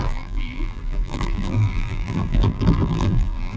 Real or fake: fake